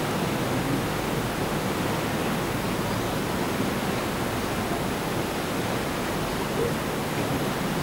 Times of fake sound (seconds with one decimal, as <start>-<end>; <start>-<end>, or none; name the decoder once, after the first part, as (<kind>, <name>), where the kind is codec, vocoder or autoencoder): 6.3-7.0 (vocoder, BigVGAN v2)